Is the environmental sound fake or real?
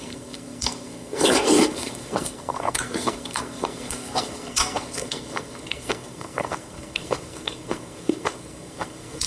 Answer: fake